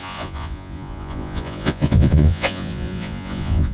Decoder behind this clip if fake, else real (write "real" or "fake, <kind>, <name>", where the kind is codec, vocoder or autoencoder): fake, vocoder, Vocos